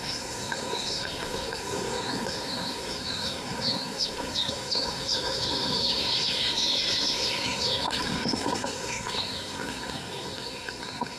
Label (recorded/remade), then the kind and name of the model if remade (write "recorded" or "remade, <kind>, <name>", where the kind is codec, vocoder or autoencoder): remade, codec, SNAC